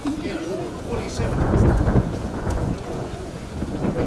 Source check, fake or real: fake